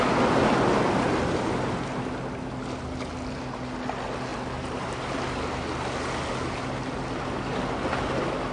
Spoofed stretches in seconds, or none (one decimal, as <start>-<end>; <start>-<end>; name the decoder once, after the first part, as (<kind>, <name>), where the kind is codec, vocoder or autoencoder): none